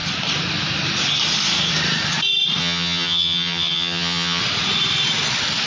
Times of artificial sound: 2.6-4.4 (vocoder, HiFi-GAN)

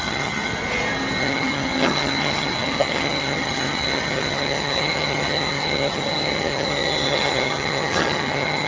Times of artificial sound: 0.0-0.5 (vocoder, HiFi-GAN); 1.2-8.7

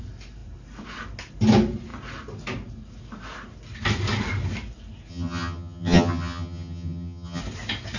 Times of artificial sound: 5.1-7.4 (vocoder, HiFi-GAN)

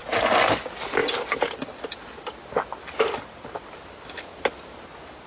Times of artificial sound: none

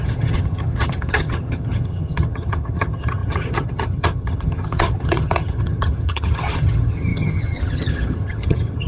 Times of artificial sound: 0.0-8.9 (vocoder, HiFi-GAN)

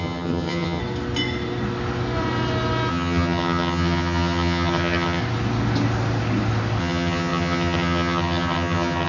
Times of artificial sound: 0.0-0.8 (vocoder, HiFi-GAN); 2.9-5.2; 6.8-9.1